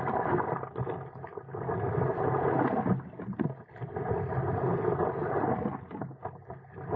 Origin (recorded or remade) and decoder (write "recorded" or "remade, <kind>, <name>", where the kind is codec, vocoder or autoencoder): recorded